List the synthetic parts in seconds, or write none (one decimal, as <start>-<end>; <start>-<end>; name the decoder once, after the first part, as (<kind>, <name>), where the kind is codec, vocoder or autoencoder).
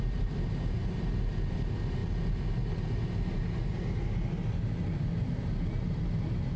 none